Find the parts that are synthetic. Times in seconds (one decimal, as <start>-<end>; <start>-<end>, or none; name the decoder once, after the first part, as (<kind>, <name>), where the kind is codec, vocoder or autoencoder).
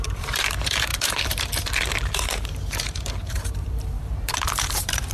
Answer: 0.0-5.1 (vocoder, BigVGAN v2)